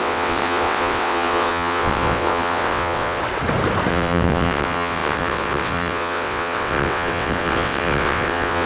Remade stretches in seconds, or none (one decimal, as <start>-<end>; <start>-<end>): 0.0-3.2; 3.9-8.7